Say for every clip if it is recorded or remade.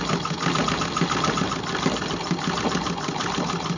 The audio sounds recorded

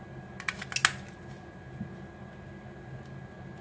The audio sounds recorded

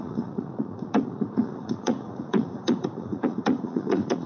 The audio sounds remade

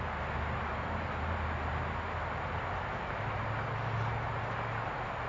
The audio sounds recorded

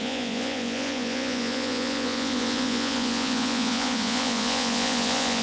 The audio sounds remade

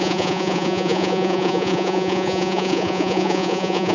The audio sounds remade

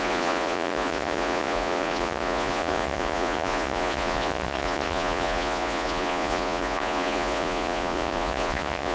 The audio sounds remade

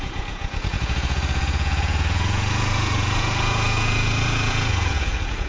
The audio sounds remade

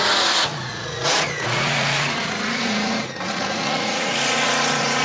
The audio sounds remade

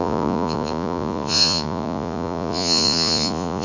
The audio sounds remade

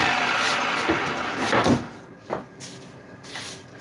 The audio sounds recorded